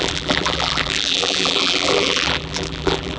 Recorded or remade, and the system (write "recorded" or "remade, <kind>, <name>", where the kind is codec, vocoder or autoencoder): remade, vocoder, BigVGAN v2